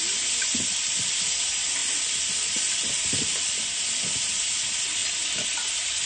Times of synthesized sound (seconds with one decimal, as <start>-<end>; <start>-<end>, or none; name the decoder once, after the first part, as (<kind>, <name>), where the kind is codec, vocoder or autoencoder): none